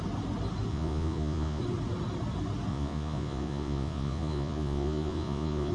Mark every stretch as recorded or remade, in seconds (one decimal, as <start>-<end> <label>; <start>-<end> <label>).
0.0-0.7 recorded; 0.7-1.6 remade; 1.6-2.7 recorded; 2.7-5.7 remade

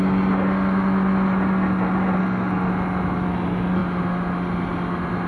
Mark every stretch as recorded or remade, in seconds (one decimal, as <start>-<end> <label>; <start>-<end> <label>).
0.0-2.2 recorded; 2.2-2.7 remade; 2.7-5.3 recorded

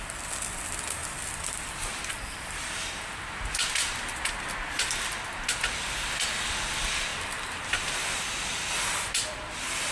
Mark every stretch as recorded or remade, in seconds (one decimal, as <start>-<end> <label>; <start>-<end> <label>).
0.0-9.9 recorded

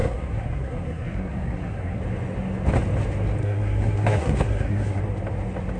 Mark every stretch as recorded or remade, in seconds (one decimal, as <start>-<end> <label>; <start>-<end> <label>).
0.0-2.0 remade; 2.0-3.4 recorded; 3.4-5.0 remade; 5.0-5.8 recorded

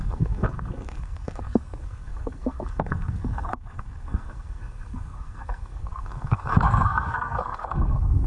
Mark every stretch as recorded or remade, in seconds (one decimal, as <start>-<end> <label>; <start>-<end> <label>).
0.0-8.3 remade

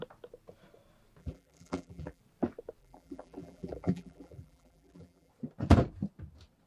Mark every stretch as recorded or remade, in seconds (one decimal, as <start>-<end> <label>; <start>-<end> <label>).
0.0-1.2 recorded; 1.2-2.2 remade; 2.2-2.8 recorded; 2.8-5.3 remade; 5.3-6.7 recorded

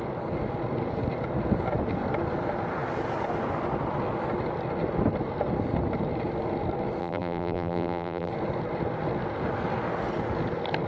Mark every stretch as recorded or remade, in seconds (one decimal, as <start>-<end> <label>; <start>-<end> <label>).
0.0-7.0 recorded; 7.0-8.3 remade; 8.3-10.9 recorded

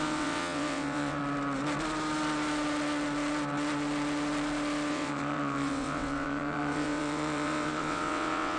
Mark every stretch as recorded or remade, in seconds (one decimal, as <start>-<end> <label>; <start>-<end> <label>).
0.0-1.2 remade; 1.2-4.9 recorded; 4.9-8.6 remade